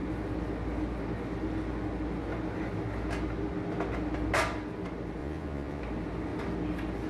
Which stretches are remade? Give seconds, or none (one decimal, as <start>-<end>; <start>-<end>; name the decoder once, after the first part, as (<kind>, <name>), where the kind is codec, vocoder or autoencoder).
5.2-5.8 (vocoder, Vocos)